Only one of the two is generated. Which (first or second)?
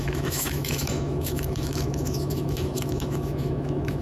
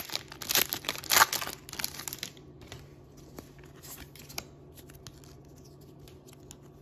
first